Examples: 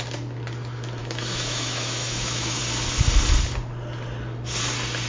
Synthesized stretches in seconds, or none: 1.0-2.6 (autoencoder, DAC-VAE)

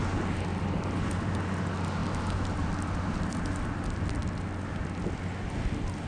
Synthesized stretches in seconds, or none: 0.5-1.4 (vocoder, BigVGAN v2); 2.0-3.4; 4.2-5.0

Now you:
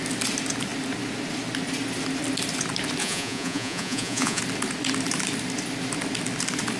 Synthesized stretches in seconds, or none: 3.0-4.4 (vocoder, Vocos)

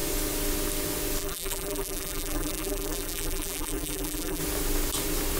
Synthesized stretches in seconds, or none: 1.2-4.4 (vocoder, BigVGAN v2)